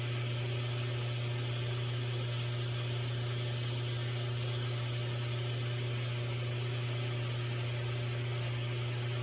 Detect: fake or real real